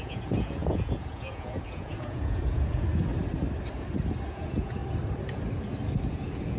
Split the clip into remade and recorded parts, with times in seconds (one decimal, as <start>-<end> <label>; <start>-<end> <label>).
0.0-3.1 remade; 3.1-4.3 recorded; 4.3-4.8 remade; 4.8-6.1 recorded; 6.1-6.6 remade